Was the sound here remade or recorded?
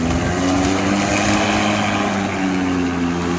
recorded